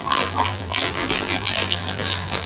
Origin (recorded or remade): remade